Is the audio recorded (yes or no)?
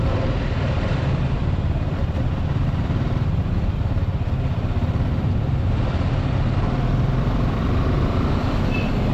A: no